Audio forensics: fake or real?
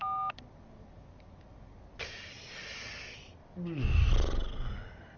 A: real